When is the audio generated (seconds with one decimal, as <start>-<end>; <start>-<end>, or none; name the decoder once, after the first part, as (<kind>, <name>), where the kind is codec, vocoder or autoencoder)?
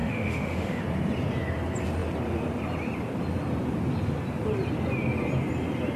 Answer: 0.0-0.8 (autoencoder, DAC-VAE)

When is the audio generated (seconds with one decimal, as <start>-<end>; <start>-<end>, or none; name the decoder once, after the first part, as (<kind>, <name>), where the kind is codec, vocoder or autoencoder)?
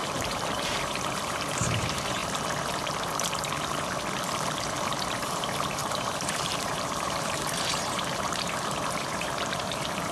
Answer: 0.0-2.2 (vocoder, BigVGAN v2); 5.1-10.1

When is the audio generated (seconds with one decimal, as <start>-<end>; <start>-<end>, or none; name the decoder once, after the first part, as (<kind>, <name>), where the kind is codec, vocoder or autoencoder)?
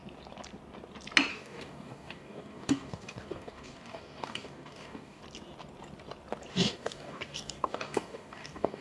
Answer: 1.3-5.2 (codec, DAC); 6.5-8.8